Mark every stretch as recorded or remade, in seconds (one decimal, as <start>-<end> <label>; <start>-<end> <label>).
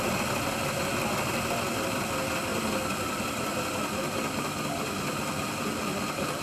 0.0-6.4 recorded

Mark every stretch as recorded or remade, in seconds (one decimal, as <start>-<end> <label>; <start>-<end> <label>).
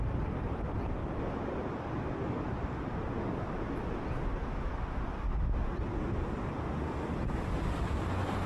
0.0-8.5 recorded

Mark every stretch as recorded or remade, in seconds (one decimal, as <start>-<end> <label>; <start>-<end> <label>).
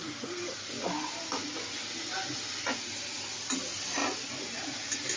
0.0-4.0 recorded; 4.0-4.8 remade; 4.8-5.2 recorded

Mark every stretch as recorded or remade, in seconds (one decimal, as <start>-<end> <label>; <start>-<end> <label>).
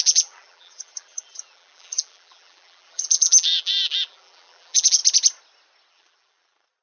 0.0-5.0 remade; 5.0-5.9 recorded; 5.9-6.8 remade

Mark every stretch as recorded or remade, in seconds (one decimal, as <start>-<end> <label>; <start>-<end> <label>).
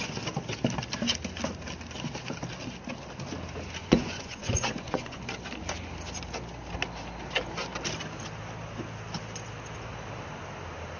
0.0-3.8 recorded; 3.8-5.2 remade; 5.2-11.0 recorded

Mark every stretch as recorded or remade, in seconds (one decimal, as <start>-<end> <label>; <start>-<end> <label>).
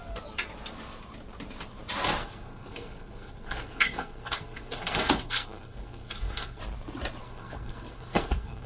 0.0-2.2 recorded; 2.2-6.6 remade; 6.6-7.2 recorded; 7.2-8.7 remade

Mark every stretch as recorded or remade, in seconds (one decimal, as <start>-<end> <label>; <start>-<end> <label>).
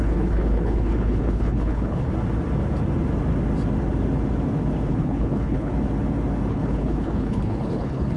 0.0-2.1 remade; 2.1-4.9 recorded; 4.9-5.7 remade; 5.7-6.5 recorded; 6.5-8.2 remade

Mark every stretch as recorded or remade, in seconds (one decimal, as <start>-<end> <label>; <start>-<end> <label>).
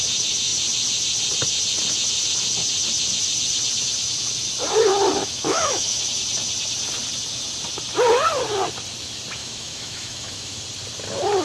0.0-5.2 recorded; 5.2-6.0 remade; 6.0-9.4 recorded; 9.4-10.6 remade; 10.6-11.4 recorded